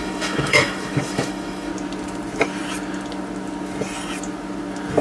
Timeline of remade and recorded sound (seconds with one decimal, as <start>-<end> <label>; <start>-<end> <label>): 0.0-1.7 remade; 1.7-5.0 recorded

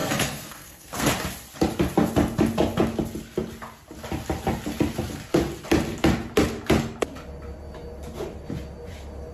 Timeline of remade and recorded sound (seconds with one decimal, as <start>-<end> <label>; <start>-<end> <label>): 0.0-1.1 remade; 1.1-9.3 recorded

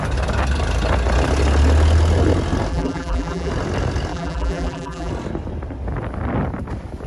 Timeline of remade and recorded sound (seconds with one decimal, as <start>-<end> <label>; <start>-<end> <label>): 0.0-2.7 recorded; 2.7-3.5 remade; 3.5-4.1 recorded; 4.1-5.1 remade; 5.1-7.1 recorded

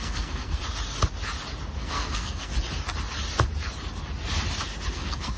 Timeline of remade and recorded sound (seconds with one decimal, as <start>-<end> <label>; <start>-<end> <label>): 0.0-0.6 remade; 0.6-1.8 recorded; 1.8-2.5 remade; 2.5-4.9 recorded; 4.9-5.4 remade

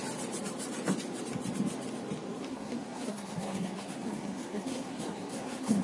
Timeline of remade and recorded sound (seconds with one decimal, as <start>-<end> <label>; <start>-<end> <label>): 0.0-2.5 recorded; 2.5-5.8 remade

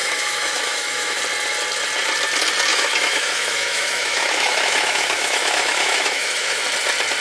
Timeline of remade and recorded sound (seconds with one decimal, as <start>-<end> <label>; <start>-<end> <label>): 0.0-1.2 remade; 1.2-2.7 recorded; 2.7-6.6 remade; 6.6-7.2 recorded

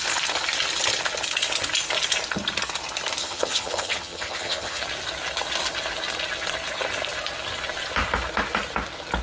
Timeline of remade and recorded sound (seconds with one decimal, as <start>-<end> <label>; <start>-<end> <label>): 0.0-3.2 recorded; 3.2-4.8 remade; 4.8-9.2 recorded